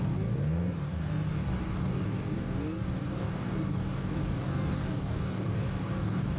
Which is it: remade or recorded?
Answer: remade